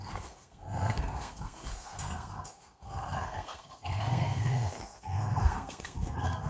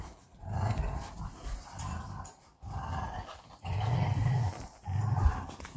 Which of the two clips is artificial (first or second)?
first